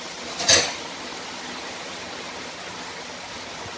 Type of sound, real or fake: real